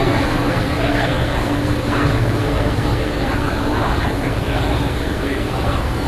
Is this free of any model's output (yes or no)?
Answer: no